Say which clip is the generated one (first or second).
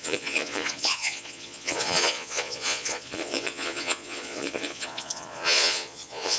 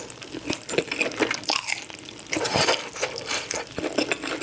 first